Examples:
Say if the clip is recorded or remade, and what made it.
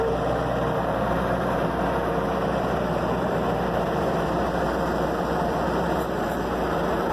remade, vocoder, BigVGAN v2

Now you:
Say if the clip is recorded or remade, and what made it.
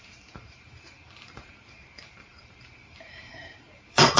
remade, vocoder, BigVGAN v2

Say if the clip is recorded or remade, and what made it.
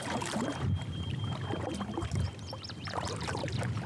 remade, vocoder, BigVGAN v2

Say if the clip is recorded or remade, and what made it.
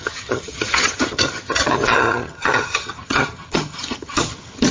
remade, vocoder, HiFi-GAN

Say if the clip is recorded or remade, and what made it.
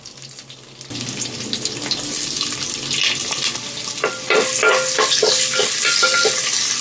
recorded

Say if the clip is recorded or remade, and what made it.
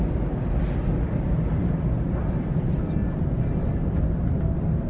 recorded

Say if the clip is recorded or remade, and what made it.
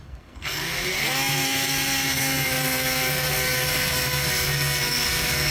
remade, codec, SNAC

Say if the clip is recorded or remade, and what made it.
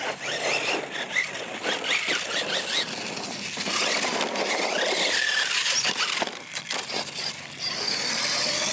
recorded